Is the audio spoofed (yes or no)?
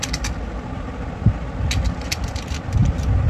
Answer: no